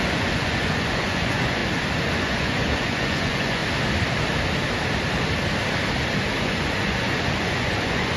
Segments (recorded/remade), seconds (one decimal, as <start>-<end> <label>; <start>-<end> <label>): 0.0-1.6 remade; 1.6-2.2 recorded; 2.2-3.6 remade; 3.6-6.4 recorded; 6.4-8.2 remade